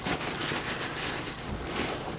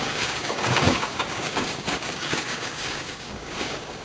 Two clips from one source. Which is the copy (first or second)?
second